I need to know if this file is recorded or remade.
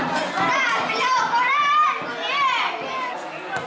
recorded